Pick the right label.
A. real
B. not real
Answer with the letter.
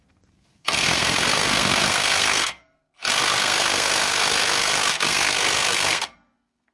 B